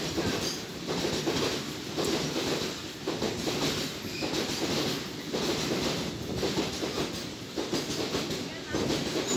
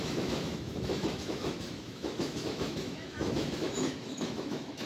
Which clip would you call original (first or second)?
first